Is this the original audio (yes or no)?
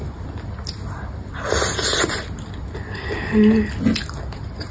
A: yes